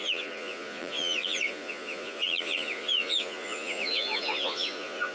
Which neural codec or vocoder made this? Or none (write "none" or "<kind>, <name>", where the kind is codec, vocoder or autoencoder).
vocoder, Vocos